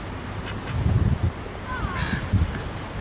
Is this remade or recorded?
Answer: remade